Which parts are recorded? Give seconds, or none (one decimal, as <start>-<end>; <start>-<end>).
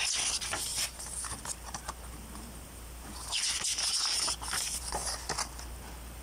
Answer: 0.0-0.7; 4.3-6.2